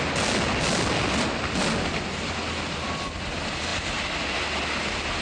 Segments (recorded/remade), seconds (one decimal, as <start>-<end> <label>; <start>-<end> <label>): 0.0-5.2 recorded